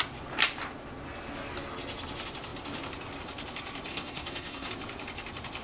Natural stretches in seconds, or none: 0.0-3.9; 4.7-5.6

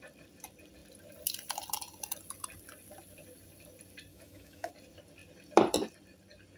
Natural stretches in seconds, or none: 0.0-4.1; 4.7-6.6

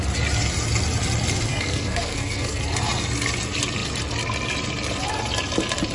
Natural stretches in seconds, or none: 0.0-1.5; 2.6-5.9

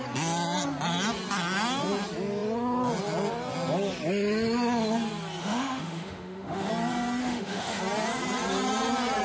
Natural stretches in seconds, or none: 0.0-5.4; 6.7-7.2; 7.8-9.2

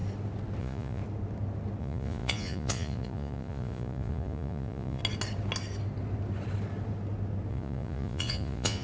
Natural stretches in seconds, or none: 0.0-0.6; 1.0-1.8; 5.0-7.5

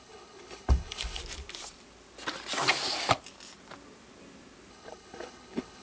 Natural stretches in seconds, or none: 1.2-4.7

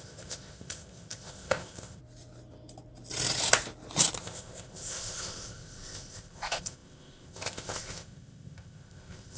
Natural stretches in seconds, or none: 2.0-4.2